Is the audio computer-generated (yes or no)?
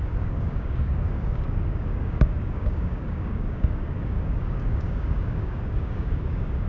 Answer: yes